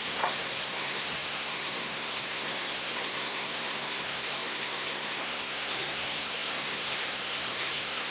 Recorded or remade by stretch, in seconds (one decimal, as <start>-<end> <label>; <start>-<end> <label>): 0.0-8.1 remade